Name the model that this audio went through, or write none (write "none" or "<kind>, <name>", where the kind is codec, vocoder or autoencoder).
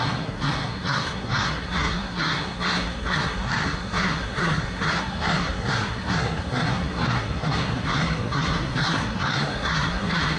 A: codec, SNAC